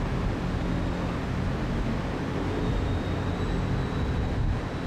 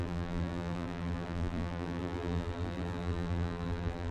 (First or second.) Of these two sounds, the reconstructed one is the second